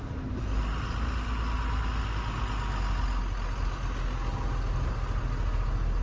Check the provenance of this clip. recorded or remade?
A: recorded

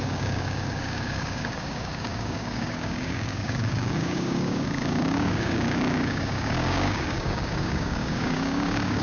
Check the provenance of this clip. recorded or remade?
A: remade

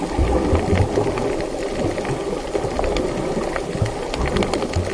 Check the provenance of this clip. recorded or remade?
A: recorded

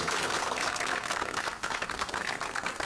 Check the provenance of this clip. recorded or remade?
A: remade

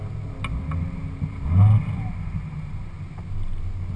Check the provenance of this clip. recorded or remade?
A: recorded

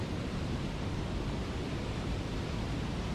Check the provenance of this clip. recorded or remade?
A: remade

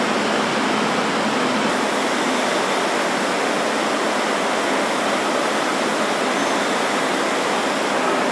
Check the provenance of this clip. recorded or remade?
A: recorded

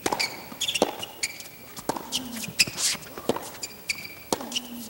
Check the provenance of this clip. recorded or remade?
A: recorded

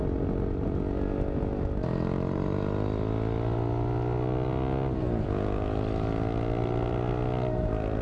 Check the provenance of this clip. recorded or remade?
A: recorded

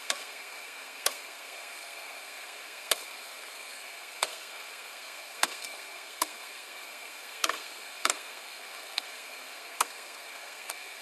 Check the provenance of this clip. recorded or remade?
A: remade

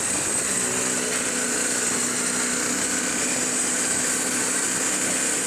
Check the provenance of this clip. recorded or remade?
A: recorded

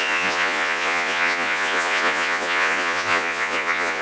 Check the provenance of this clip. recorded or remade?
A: remade